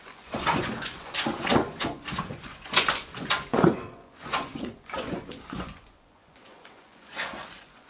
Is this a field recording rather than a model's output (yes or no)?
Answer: no